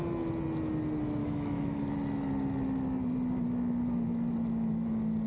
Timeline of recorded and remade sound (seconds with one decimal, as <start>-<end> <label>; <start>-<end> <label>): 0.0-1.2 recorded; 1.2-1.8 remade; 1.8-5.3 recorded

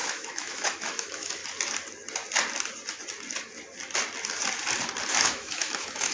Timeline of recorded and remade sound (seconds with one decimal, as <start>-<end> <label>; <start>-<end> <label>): 0.0-1.4 remade; 1.4-5.1 recorded; 5.1-6.1 remade

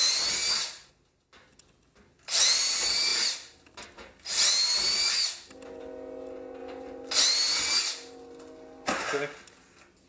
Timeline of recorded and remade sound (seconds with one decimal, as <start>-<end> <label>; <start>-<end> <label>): 0.0-10.1 recorded

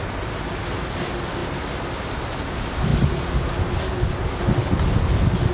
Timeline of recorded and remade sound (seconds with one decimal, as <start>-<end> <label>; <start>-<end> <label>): 0.0-5.5 recorded

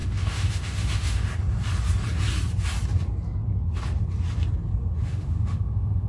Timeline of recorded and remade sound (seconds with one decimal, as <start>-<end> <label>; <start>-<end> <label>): 0.0-1.3 remade; 1.3-5.0 recorded; 5.0-6.1 remade

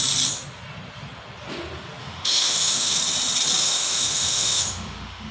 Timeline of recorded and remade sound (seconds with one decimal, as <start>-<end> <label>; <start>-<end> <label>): 0.0-2.0 recorded; 2.0-3.0 remade; 3.0-3.6 recorded; 3.6-5.3 remade

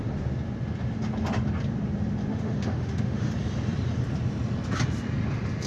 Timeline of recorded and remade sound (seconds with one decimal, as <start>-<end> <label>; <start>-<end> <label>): 0.0-2.3 recorded; 2.3-3.3 remade; 3.3-5.7 recorded